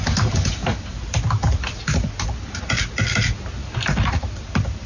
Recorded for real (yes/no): yes